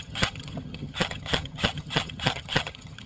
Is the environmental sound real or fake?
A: fake